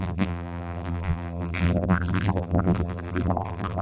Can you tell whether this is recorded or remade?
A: remade